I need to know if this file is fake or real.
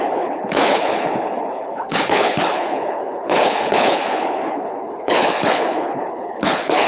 fake